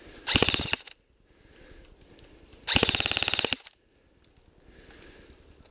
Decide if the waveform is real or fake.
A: real